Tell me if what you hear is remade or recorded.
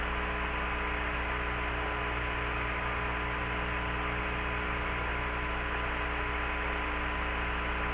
recorded